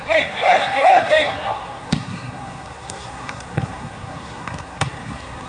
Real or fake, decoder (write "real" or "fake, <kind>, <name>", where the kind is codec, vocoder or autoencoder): fake, codec, SNAC